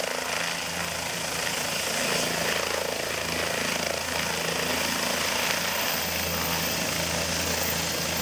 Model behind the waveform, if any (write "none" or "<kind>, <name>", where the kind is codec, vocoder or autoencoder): none